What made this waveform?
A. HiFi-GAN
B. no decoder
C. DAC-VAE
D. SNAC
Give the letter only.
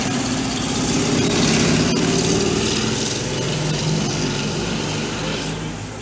B